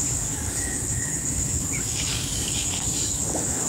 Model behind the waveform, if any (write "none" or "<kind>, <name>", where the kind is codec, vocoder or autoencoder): codec, DAC